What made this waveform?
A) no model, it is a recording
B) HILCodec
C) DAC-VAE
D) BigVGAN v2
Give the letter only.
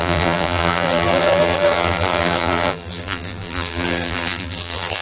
D